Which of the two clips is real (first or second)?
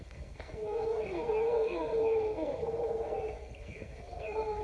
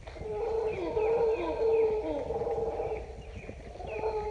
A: second